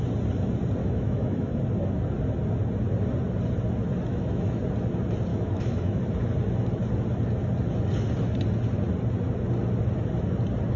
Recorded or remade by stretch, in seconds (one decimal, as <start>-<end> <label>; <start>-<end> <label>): 0.0-0.8 recorded; 0.8-1.6 remade; 1.6-4.1 recorded; 4.1-4.6 remade; 4.6-5.3 recorded; 5.3-6.0 remade; 6.0-10.8 recorded